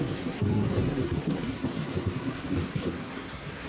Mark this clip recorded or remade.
remade